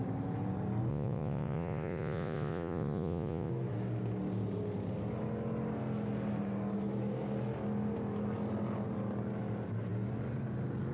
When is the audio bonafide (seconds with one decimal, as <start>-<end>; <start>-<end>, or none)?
0.0-0.9; 3.5-10.9

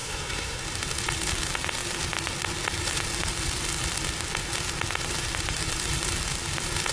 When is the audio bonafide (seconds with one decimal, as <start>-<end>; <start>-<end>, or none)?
0.6-6.9

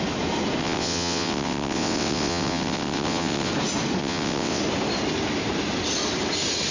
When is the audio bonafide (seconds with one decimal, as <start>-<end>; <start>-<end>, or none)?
0.0-0.6; 3.5-4.0; 4.6-6.7

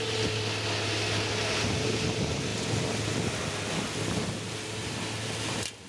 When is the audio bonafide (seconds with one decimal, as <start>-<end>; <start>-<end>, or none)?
0.0-5.9

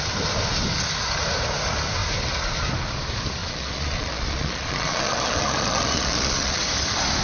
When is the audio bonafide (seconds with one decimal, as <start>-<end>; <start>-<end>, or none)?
0.0-3.4; 6.6-7.2